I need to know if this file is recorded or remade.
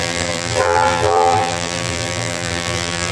remade